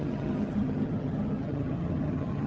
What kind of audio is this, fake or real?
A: fake